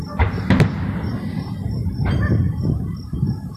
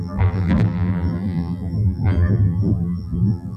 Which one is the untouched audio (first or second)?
first